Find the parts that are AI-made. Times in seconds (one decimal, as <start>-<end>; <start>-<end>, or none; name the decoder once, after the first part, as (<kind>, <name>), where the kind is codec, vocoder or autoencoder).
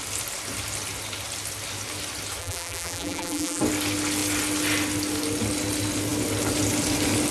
2.4-3.6 (vocoder, BigVGAN v2)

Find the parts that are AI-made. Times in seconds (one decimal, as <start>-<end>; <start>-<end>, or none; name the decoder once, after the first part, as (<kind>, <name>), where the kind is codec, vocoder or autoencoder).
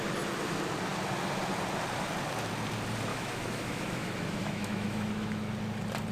3.1-5.5 (autoencoder, DAC-VAE)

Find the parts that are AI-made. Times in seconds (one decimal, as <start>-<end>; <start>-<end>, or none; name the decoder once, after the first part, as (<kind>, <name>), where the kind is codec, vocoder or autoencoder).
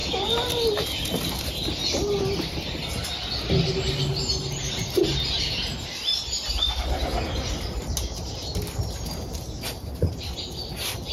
none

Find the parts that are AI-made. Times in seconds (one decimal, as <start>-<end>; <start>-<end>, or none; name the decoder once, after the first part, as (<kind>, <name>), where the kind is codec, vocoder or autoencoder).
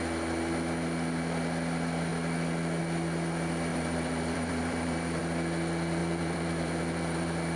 3.7-5.2 (vocoder, BigVGAN v2); 6.0-7.6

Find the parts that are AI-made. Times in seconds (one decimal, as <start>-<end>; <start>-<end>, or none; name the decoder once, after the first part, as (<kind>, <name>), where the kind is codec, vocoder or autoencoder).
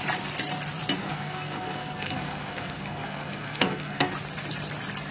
1.0-4.1 (codec, SNAC)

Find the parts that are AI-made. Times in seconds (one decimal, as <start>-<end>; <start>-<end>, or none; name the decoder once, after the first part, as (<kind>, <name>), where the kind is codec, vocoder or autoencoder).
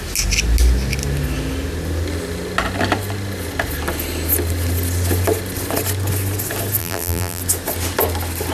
6.8-7.4 (vocoder, BigVGAN v2)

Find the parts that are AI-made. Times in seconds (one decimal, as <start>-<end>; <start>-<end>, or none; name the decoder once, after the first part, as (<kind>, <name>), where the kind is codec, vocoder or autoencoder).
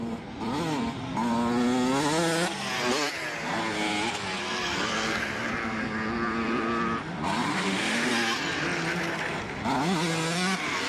7.5-8.1 (autoencoder, DAC-VAE)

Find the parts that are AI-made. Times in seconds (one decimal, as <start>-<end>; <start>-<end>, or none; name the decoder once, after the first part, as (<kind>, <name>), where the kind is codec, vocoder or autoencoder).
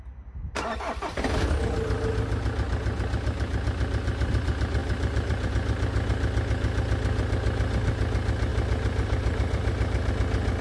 4.8-5.5 (vocoder, BigVGAN v2); 8.5-10.1